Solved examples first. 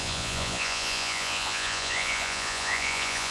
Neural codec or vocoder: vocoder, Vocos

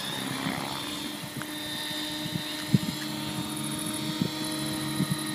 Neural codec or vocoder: none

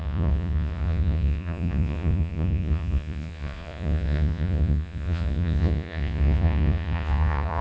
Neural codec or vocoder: vocoder, Vocos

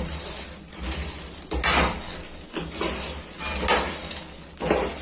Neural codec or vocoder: none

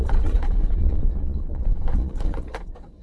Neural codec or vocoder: vocoder, Vocos